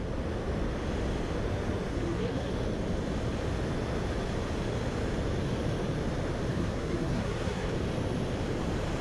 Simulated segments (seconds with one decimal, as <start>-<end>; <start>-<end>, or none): 1.9-2.5; 6.5-7.7